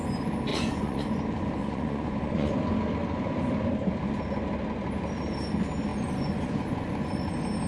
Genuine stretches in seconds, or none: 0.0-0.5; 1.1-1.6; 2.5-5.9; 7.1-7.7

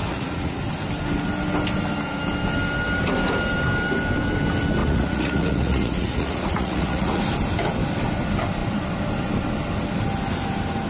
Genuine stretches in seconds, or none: 0.6-4.8; 7.2-10.9